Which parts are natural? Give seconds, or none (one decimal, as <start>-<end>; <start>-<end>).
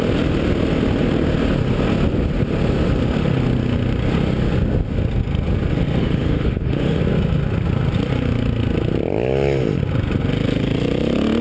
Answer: 0.0-6.0; 7.0-11.4